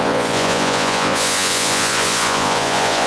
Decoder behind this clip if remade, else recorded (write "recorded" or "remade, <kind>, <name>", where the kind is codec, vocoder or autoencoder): remade, vocoder, Vocos